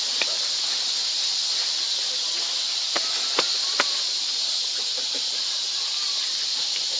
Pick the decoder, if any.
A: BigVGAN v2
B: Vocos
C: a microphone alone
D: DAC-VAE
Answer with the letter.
C